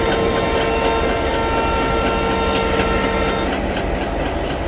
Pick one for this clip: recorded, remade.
recorded